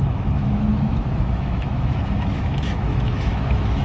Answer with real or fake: fake